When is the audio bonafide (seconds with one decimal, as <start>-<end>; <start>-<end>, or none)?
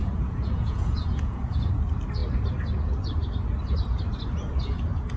1.7-5.2